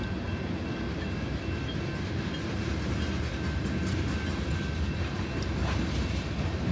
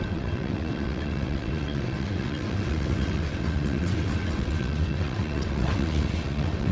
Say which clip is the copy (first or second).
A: second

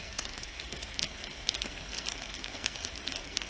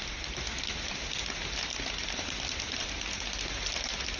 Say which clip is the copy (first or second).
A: first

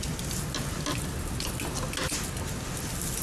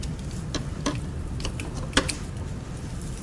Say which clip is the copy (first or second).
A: second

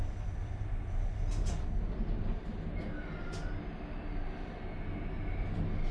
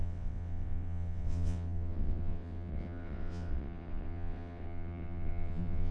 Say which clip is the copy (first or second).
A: second